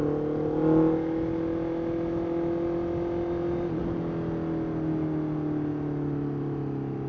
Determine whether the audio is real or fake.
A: real